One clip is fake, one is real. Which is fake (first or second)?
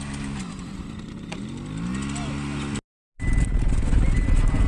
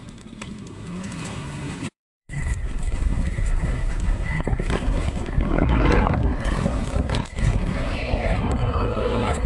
second